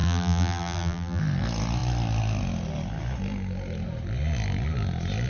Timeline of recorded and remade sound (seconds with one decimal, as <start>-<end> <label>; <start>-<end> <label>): 0.0-1.2 remade; 1.2-5.3 recorded